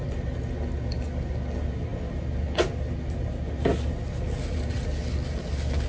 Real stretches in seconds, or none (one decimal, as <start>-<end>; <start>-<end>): 0.0-5.9